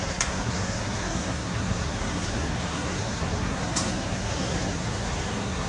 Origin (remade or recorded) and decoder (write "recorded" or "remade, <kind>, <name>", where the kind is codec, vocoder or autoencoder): remade, codec, SNAC